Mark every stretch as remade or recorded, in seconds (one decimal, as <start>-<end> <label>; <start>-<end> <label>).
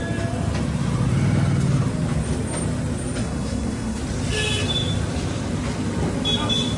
0.0-3.2 recorded; 3.2-4.0 remade; 4.0-6.8 recorded